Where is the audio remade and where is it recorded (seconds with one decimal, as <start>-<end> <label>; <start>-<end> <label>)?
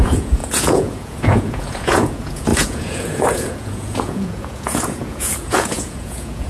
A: 0.0-6.5 remade